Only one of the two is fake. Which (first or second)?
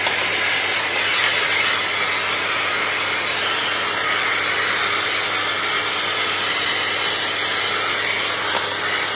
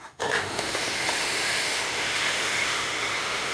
second